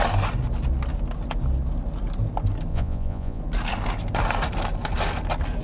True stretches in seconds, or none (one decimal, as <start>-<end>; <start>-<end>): 0.0-2.7; 3.4-5.6

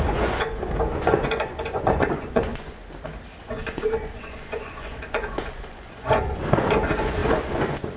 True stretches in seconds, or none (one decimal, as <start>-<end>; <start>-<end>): 2.8-3.4

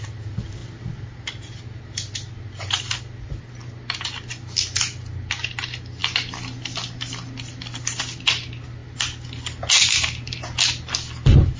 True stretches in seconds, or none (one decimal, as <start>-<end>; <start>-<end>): 0.0-11.6

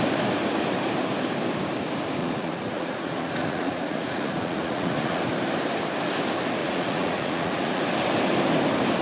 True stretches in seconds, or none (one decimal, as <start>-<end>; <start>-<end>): 0.0-2.2; 5.2-6.6; 7.8-9.0

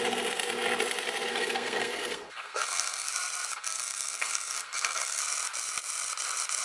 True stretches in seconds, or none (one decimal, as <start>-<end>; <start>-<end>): 0.0-1.3; 3.1-3.5; 5.2-6.6

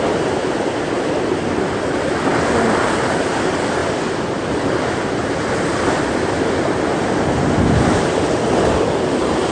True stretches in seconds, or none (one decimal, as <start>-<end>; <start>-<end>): 0.0-9.5